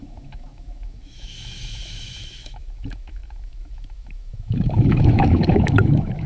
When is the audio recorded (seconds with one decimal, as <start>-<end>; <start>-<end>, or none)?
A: none